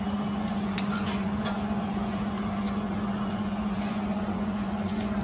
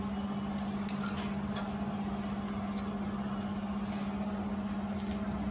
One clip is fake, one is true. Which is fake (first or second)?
first